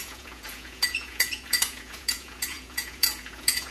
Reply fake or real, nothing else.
fake